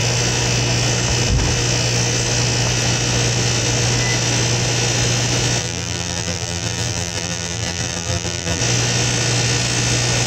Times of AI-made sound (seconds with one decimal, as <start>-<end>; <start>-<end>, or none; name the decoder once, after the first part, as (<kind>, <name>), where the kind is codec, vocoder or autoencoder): 5.6-8.6 (vocoder, BigVGAN v2)